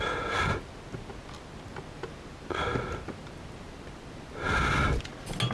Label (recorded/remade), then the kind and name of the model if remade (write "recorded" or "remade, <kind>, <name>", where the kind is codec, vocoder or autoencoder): recorded